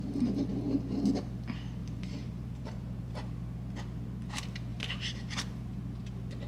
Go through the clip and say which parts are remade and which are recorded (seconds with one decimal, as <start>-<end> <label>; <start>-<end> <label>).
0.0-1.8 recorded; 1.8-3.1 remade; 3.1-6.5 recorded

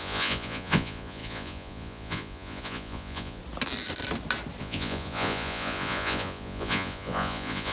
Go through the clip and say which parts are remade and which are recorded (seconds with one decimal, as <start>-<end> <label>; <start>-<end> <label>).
0.0-3.4 remade; 3.4-4.6 recorded; 4.6-7.7 remade

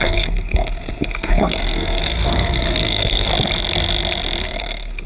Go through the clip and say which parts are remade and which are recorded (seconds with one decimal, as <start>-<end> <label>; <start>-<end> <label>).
0.0-3.3 remade; 3.3-4.4 recorded; 4.4-5.1 remade

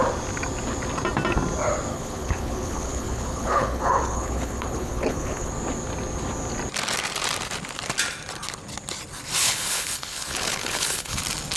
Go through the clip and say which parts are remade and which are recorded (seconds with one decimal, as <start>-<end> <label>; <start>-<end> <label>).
0.0-1.9 recorded; 1.9-5.5 remade; 5.5-9.4 recorded; 9.4-11.2 remade; 11.2-11.6 recorded

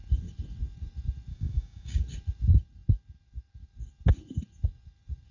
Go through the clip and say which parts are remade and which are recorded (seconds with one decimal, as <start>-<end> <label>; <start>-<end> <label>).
0.0-1.3 recorded; 1.3-2.0 remade; 2.0-5.3 recorded

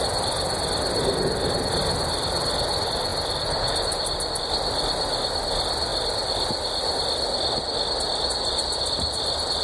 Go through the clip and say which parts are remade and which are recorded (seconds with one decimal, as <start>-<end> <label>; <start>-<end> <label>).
0.0-9.6 recorded

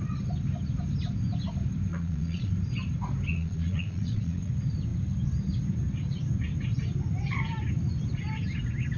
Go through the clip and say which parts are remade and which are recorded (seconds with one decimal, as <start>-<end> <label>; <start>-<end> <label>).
0.0-1.9 recorded; 1.9-2.5 remade; 2.5-3.3 recorded; 3.3-4.5 remade; 4.5-9.0 recorded

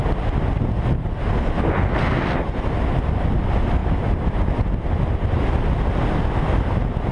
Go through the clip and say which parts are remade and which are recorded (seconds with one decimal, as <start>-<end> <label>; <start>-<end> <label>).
0.0-3.8 recorded; 3.8-4.5 remade; 4.5-7.1 recorded